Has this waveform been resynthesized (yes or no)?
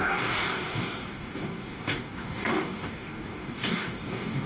yes